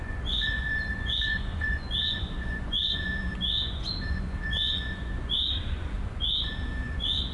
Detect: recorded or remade remade